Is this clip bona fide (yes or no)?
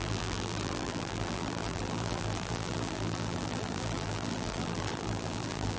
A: no